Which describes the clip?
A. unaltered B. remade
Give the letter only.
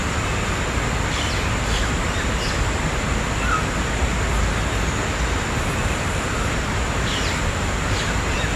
A